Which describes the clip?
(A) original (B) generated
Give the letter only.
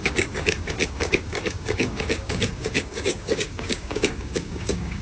B